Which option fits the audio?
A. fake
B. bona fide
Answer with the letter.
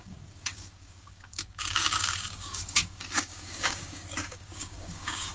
A